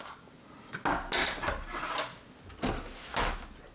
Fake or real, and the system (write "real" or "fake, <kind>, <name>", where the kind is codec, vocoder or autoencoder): real